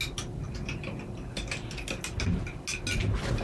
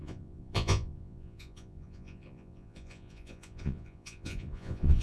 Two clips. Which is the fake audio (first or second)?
second